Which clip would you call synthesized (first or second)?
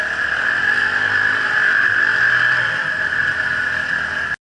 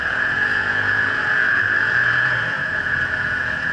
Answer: second